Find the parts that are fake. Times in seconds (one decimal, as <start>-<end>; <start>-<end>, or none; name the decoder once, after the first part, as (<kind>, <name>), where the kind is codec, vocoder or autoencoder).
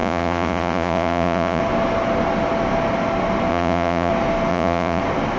0.0-1.6 (vocoder, Vocos); 3.5-4.1; 4.5-5.0